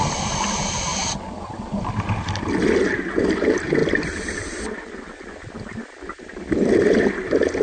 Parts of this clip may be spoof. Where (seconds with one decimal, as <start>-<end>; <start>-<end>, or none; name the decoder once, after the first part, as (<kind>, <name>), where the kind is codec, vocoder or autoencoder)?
none

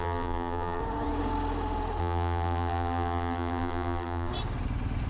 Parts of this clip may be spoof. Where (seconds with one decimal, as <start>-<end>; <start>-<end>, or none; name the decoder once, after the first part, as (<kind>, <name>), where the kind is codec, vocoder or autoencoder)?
0.0-0.8 (vocoder, BigVGAN v2); 2.0-4.3

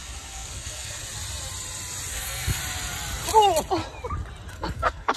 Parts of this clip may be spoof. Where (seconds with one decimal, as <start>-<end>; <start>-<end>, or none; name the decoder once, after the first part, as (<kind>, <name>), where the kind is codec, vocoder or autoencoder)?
0.0-1.0 (codec, SNAC); 2.1-2.6; 4.5-5.2

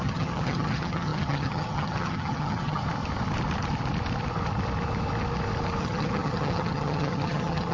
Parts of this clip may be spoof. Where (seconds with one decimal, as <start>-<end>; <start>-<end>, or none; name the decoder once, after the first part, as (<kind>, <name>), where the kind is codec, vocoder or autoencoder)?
0.0-2.8 (vocoder, HiFi-GAN); 5.8-7.7